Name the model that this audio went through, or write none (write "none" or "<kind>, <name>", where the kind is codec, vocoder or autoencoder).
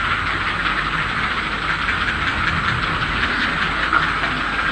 none